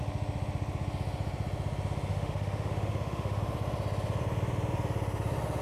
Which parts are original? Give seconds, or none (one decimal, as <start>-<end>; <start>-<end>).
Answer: 0.0-2.1; 3.4-5.6